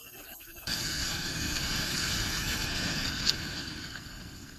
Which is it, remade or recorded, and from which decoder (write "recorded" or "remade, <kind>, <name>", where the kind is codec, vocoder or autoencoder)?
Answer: remade, codec, SNAC